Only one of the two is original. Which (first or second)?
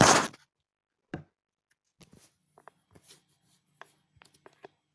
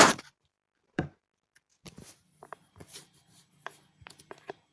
first